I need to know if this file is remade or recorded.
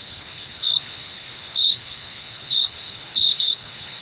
remade